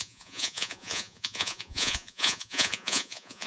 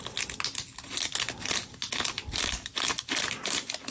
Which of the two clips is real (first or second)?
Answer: second